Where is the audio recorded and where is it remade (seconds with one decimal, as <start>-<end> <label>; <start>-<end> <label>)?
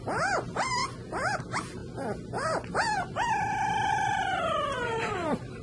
0.0-0.8 remade; 0.8-1.4 recorded; 1.4-1.8 remade; 1.8-3.9 recorded; 3.9-5.6 remade